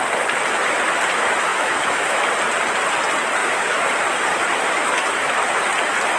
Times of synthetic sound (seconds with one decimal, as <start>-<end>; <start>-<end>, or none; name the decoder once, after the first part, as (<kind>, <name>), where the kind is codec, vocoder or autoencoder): 1.5-2.3 (autoencoder, DAC-VAE); 3.4-3.9; 4.3-5.6